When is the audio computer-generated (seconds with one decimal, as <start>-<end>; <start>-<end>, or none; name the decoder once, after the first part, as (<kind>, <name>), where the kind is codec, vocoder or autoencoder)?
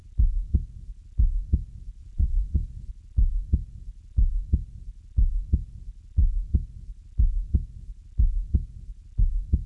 2.0-2.9 (vocoder, BigVGAN v2)